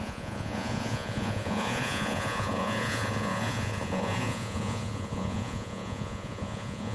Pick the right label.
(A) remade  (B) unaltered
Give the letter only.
A